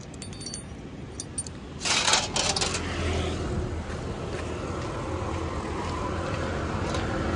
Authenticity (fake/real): real